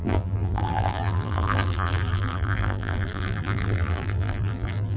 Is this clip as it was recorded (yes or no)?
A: no